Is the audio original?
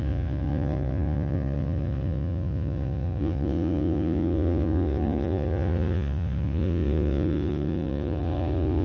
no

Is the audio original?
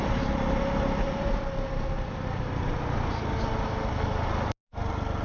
yes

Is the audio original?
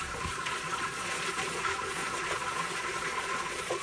no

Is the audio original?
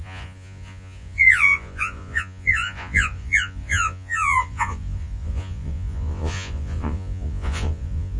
no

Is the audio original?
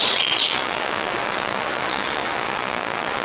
no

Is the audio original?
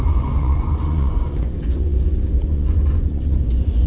no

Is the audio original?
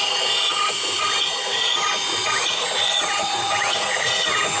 no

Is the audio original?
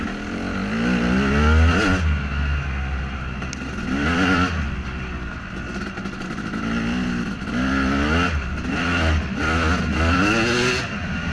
yes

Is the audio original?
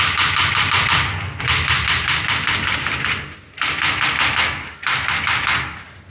yes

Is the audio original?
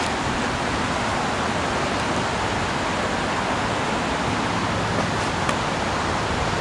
yes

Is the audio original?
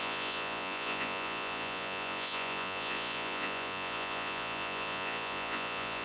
no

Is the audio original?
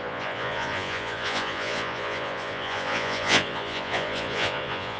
no